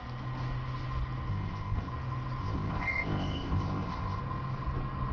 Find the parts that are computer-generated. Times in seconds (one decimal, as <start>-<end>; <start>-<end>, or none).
1.3-1.9; 2.4-4.2